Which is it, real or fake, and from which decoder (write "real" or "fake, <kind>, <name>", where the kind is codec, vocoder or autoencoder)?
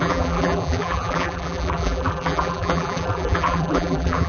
fake, vocoder, BigVGAN v2